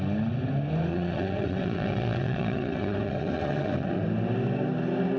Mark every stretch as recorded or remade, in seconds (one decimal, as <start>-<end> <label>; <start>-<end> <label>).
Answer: 0.0-0.9 recorded; 0.9-4.0 remade; 4.0-5.2 recorded